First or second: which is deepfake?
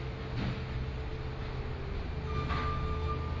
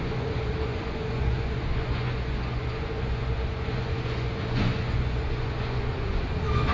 second